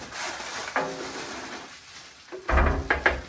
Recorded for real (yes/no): yes